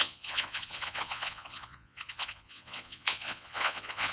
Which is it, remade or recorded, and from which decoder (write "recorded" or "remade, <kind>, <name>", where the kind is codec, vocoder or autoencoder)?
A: remade, vocoder, Vocos